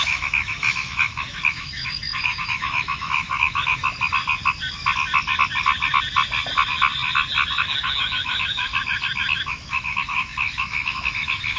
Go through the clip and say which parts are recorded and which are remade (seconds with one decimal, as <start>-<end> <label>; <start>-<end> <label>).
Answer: 0.0-3.8 remade; 3.8-7.6 recorded; 7.6-8.7 remade; 8.7-9.5 recorded; 9.5-11.6 remade